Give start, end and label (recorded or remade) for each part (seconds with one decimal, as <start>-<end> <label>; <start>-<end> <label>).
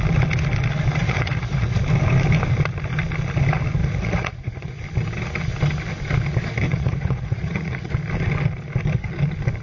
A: 0.0-1.0 recorded; 1.0-1.8 remade; 1.8-3.8 recorded; 3.8-4.8 remade; 4.8-6.7 recorded; 6.7-7.9 remade; 7.9-9.6 recorded